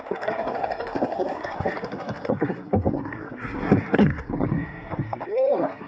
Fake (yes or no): yes